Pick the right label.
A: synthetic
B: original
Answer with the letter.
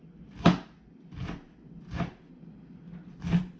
B